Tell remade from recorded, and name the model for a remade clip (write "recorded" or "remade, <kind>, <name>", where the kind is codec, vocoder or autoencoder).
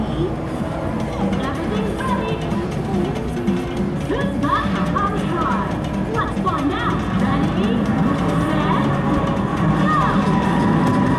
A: recorded